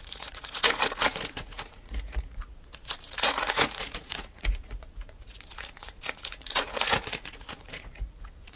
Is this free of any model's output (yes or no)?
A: no